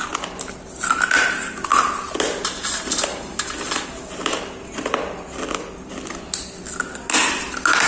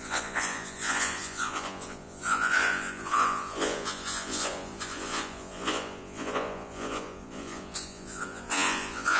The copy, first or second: second